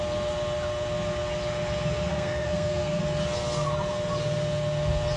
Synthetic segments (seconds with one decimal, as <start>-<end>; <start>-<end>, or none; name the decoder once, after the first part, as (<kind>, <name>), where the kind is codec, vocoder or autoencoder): 2.1-3.0 (codec, SNAC)